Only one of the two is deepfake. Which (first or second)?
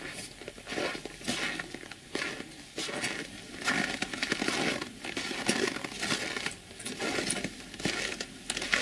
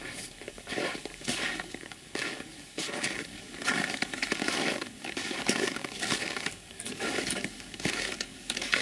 second